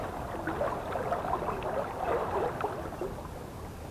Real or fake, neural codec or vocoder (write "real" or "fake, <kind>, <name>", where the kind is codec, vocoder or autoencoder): real